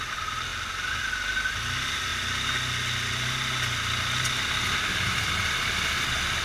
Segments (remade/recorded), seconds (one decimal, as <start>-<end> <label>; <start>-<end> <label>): 0.0-6.4 recorded